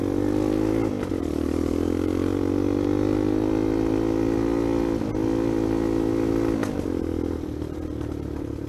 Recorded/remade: recorded